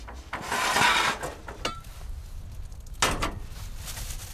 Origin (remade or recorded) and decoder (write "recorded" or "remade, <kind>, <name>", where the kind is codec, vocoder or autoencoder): recorded